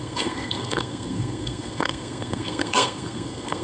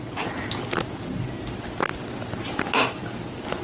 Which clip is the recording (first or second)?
second